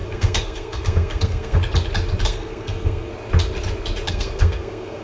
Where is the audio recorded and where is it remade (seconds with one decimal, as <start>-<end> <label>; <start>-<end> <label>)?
0.0-1.6 remade; 1.6-2.2 recorded; 2.2-3.1 remade; 3.1-4.1 recorded; 4.1-5.0 remade